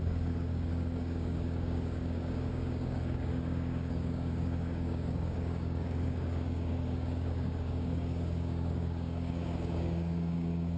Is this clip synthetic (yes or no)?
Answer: yes